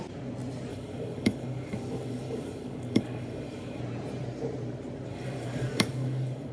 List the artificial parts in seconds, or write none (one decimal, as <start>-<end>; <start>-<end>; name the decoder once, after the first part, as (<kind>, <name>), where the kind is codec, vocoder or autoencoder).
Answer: 0.7-3.8 (codec, DAC); 5.1-6.5